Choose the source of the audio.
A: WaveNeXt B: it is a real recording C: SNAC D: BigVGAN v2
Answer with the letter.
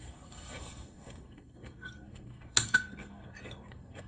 C